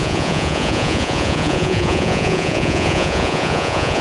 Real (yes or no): no